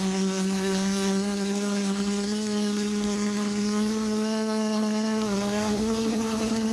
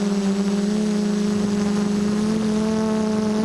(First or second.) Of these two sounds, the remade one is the first